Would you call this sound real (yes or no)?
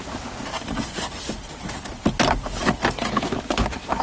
yes